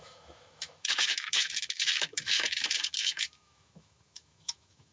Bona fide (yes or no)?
no